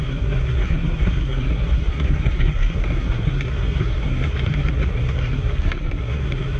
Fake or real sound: fake